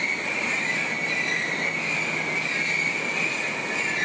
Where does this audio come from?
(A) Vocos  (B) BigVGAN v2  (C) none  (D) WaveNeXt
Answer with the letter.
C